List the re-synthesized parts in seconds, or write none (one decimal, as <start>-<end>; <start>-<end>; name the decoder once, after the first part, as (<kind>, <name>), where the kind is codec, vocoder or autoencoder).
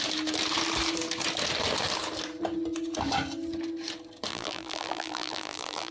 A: 4.3-5.9 (vocoder, BigVGAN v2)